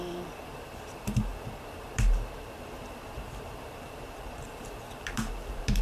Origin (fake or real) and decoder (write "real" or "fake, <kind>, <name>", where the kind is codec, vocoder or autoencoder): fake, vocoder, BigVGAN v2